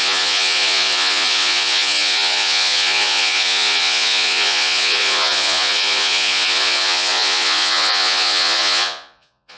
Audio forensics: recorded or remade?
remade